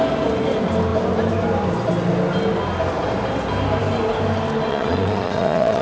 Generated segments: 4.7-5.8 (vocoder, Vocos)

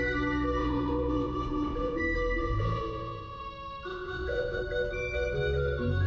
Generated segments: 0.6-2.0 (vocoder, Vocos); 2.4-3.4; 3.9-4.6